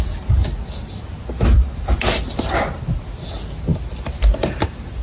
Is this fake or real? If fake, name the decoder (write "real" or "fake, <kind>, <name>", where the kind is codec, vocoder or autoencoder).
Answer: real